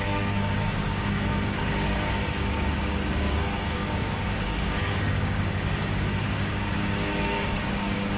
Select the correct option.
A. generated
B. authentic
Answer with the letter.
A